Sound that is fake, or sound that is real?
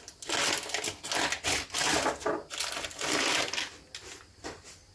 real